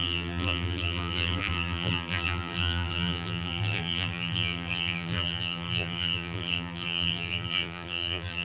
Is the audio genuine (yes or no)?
no